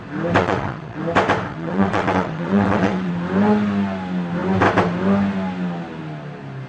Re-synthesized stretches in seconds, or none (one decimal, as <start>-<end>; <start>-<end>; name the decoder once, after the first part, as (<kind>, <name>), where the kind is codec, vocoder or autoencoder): 0.4-1.0 (vocoder, WaveNeXt); 1.5-3.1